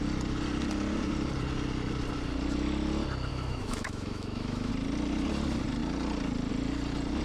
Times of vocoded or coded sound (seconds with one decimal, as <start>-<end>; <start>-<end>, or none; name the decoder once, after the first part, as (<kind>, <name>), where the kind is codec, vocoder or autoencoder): 3.3-4.7 (autoencoder, DAC-VAE)